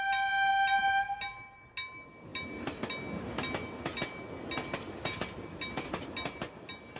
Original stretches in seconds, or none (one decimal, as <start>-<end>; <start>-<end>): 0.0-7.0